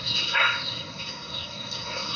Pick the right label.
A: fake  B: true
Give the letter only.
A